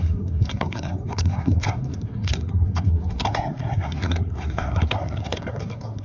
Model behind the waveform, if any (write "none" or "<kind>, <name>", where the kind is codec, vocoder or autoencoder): codec, SNAC